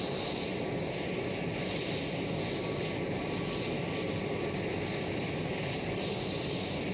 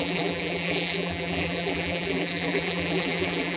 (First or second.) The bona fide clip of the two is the first